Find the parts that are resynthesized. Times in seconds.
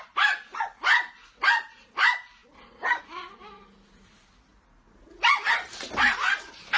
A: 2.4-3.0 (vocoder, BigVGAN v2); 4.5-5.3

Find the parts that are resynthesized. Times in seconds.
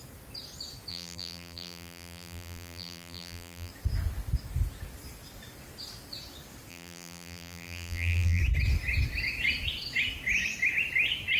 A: 0.9-3.7 (vocoder, BigVGAN v2); 6.7-8.4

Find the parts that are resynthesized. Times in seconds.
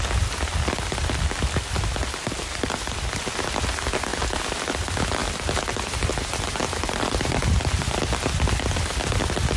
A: 4.1-4.7 (vocoder, BigVGAN v2)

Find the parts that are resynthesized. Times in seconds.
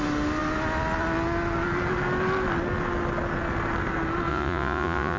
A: 4.3-5.2 (vocoder, Vocos)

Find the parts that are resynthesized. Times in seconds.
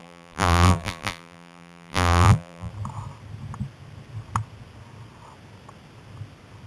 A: 0.0-2.7 (vocoder, BigVGAN v2)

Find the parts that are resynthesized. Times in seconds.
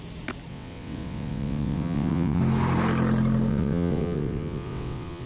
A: 0.5-2.4 (vocoder, WaveNeXt); 3.5-5.3